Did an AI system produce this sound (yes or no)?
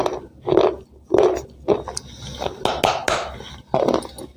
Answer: no